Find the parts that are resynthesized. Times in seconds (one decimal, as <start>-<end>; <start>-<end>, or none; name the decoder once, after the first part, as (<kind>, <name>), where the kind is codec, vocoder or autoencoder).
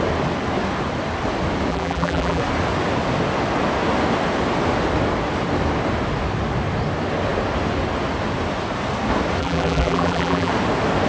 1.7-2.4 (vocoder, BigVGAN v2); 9.4-10.5